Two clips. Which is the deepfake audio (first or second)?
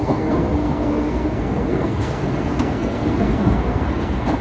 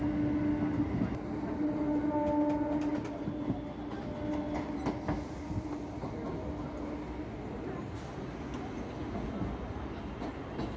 first